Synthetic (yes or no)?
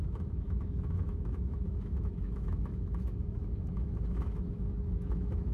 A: yes